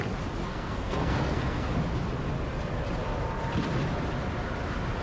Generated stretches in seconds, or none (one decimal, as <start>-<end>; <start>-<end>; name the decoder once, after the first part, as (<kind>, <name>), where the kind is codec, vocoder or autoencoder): 0.5-1.7 (codec, SNAC)